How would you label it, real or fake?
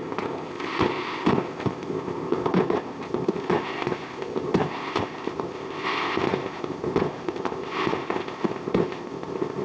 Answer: fake